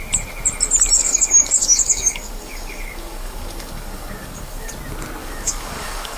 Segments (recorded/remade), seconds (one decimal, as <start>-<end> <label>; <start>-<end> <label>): 0.0-1.0 recorded; 1.0-4.7 remade; 4.7-5.2 recorded; 5.2-6.2 remade